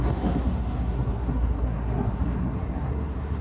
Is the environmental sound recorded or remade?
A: remade